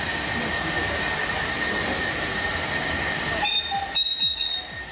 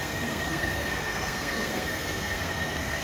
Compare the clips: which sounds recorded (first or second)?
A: first